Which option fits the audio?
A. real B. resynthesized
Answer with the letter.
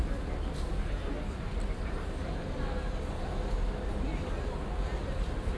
A